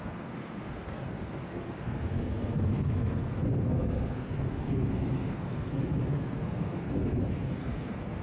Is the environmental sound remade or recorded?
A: remade